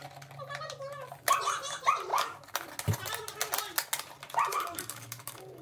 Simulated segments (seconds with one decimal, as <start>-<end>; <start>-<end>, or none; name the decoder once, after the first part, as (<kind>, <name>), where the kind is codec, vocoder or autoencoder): 2.1-2.7 (codec, DAC); 4.5-5.6